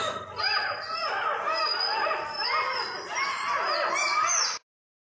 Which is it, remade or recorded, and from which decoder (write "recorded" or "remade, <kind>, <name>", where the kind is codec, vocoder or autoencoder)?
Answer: recorded